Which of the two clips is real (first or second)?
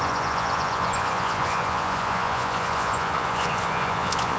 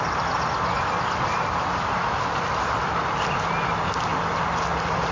second